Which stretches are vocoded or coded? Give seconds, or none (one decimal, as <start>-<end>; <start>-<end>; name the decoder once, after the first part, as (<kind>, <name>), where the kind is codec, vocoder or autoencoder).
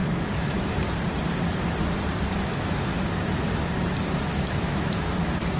0.0-0.7 (autoencoder, DAC-VAE); 2.3-3.0; 4.3-5.1